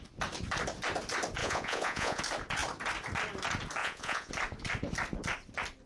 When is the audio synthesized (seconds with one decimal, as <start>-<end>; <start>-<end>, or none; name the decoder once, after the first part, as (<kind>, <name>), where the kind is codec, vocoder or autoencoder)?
1.4-2.2 (vocoder, Vocos); 3.8-4.3